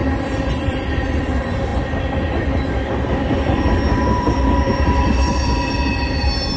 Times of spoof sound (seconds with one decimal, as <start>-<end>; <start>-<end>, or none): 0.0-1.2; 1.7-5.7